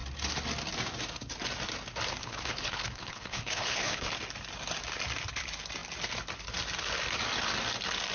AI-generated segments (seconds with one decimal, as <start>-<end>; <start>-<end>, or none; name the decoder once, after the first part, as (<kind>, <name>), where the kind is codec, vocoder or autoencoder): 2.2-4.1 (codec, HILCodec)